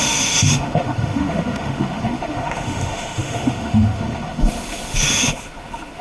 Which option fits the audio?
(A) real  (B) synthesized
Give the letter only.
B